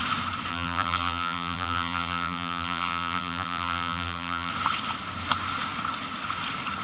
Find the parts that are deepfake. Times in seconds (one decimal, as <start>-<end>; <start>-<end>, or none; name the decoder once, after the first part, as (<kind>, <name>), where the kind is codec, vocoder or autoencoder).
0.5-4.5 (vocoder, BigVGAN v2)